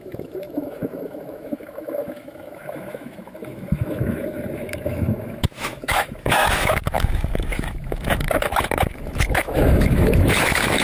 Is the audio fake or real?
fake